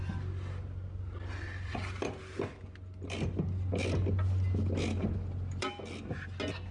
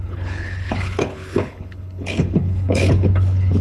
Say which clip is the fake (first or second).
second